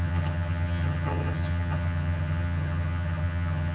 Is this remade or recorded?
remade